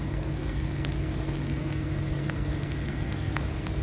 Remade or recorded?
remade